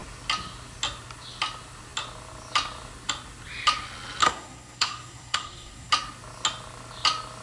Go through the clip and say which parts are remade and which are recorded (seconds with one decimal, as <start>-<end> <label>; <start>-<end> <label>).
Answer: 0.0-4.2 recorded; 4.2-5.9 remade; 5.9-7.4 recorded